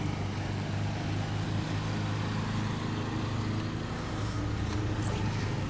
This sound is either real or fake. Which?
real